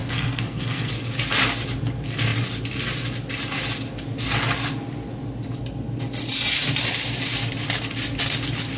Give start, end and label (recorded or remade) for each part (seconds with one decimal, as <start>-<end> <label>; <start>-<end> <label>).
0.0-0.9 remade; 0.9-8.8 recorded

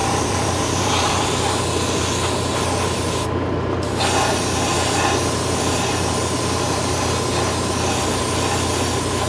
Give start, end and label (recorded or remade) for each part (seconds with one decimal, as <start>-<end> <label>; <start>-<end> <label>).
0.0-1.6 remade; 1.6-9.3 recorded

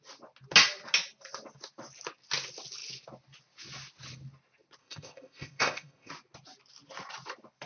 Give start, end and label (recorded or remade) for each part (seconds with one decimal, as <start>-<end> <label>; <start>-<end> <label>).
0.0-4.8 recorded; 4.8-6.1 remade; 6.1-7.7 recorded